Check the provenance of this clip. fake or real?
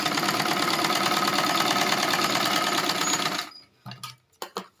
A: real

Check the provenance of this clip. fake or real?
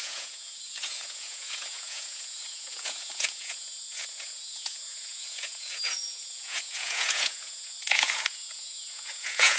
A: fake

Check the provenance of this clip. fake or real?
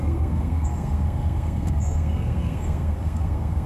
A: fake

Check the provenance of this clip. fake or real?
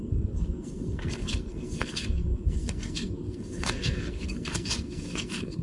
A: fake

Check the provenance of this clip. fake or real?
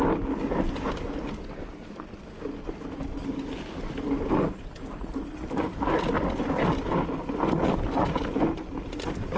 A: real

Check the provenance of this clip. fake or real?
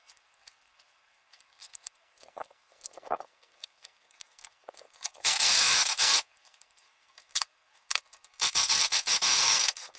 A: fake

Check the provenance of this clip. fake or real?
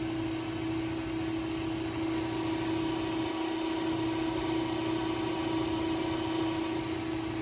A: real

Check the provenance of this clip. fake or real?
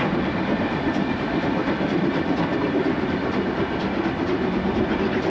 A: real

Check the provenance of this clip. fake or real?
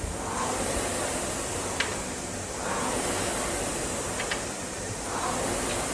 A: real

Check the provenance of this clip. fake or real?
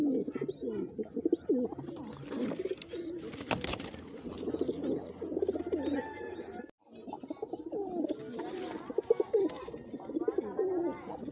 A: real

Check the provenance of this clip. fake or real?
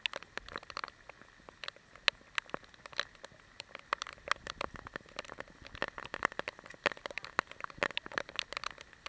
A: real